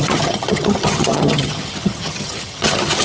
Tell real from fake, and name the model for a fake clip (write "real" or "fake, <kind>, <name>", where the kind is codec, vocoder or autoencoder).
fake, vocoder, HiFi-GAN